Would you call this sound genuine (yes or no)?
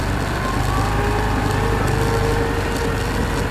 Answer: yes